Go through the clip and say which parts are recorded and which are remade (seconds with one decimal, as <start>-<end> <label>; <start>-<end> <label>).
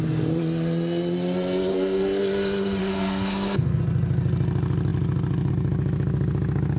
0.0-1.7 recorded; 1.7-2.2 remade; 2.2-2.8 recorded; 2.8-3.8 remade; 3.8-6.8 recorded